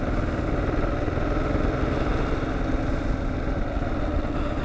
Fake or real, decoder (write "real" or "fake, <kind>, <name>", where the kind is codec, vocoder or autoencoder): real